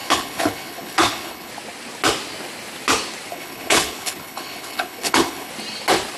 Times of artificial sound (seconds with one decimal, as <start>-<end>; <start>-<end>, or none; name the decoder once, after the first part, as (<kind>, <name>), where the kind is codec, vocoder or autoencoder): 0.0-1.5 (codec, HILCodec); 3.3-5.5